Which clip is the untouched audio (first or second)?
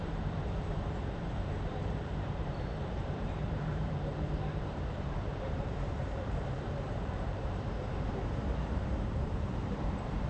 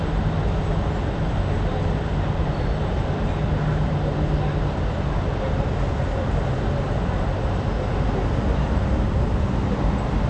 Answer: second